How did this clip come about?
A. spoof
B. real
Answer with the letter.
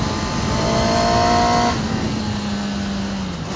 B